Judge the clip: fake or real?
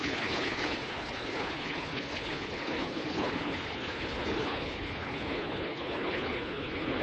fake